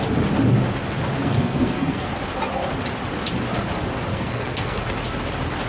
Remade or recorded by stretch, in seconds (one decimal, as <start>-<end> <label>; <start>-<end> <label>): 0.0-1.2 recorded; 1.2-2.1 remade; 2.1-4.1 recorded; 4.1-4.8 remade; 4.8-5.7 recorded